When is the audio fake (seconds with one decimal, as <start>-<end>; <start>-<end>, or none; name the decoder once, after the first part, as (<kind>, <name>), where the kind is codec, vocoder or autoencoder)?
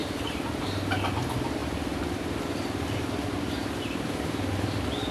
0.6-5.1 (vocoder, BigVGAN v2)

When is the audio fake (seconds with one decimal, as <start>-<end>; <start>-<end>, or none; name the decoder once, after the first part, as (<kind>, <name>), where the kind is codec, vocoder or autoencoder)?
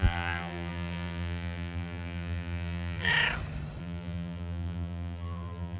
0.0-3.1 (vocoder, BigVGAN v2); 3.8-5.8